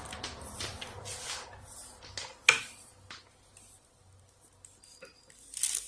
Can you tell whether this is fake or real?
real